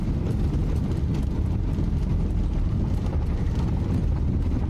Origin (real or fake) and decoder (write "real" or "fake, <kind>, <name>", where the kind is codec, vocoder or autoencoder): real